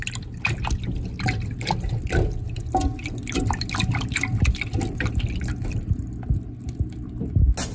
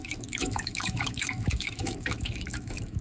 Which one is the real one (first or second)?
first